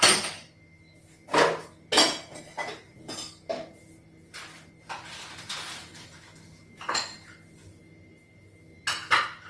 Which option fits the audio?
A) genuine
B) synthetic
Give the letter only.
A